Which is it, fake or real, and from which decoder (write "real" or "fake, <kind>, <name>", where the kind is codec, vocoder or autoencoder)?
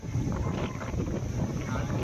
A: real